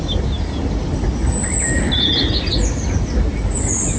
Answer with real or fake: real